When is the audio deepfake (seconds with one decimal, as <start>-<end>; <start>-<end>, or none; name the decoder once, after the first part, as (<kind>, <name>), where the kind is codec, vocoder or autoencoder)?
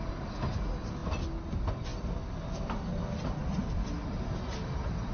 none